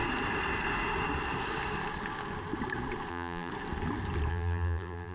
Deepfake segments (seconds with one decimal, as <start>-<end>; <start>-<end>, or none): 3.1-3.5; 4.3-5.1